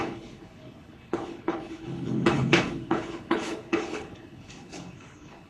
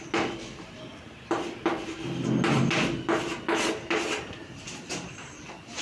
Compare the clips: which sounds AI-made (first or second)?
first